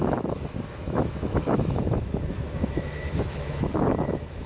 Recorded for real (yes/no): no